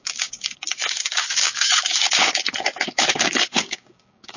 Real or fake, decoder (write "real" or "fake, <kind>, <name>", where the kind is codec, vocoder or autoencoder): fake, codec, DAC